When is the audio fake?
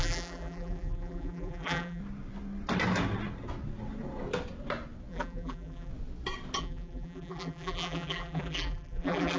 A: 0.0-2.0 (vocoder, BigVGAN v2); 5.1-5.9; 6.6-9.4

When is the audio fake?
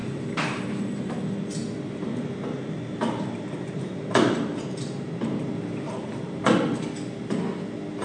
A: 0.0-1.2 (vocoder, BigVGAN v2); 1.6-6.4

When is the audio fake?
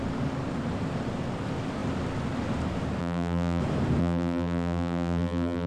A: 3.0-3.6 (vocoder, BigVGAN v2); 4.0-5.7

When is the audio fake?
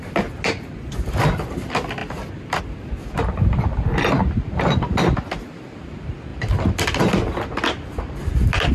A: 2.0-2.6 (vocoder, BigVGAN v2)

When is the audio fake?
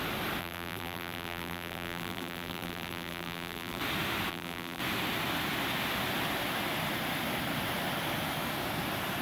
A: 0.4-3.8 (vocoder, BigVGAN v2); 4.3-4.8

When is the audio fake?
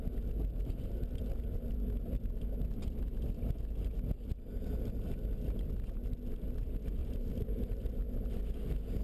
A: 7.0-7.6 (vocoder, BigVGAN v2)